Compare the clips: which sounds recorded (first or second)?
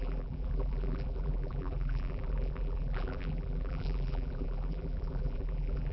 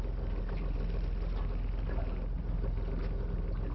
second